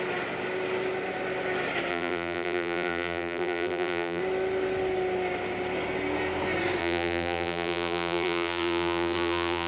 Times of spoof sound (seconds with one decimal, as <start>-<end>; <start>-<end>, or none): 1.9-4.2; 6.8-9.7